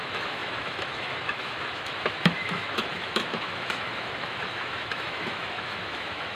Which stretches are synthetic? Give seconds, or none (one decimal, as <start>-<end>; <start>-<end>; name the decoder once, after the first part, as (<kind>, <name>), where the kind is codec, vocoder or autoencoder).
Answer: 0.0-6.3 (autoencoder, DAC-VAE)